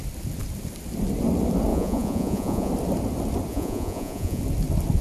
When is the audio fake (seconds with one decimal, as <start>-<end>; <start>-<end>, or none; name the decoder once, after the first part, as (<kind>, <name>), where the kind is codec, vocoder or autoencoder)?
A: 1.7-2.7 (vocoder, Vocos); 3.5-4.4